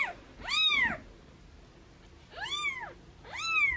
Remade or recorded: recorded